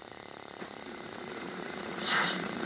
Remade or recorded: remade